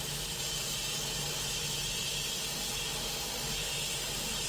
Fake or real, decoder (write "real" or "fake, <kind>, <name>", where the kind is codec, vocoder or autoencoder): real